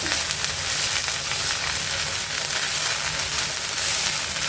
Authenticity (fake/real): real